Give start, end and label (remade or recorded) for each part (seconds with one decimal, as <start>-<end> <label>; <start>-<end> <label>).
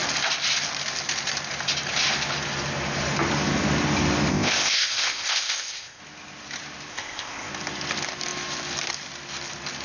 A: 0.0-4.3 recorded; 4.3-6.0 remade; 6.0-6.9 recorded; 6.9-7.5 remade; 7.5-9.8 recorded